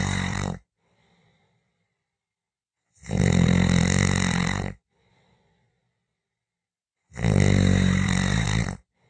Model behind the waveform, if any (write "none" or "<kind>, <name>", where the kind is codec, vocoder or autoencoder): vocoder, BigVGAN v2